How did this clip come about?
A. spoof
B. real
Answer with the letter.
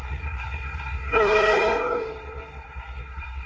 A